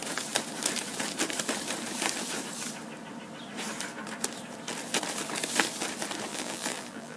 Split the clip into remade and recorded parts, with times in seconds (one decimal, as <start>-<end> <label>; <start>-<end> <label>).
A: 0.0-6.3 recorded; 6.3-7.2 remade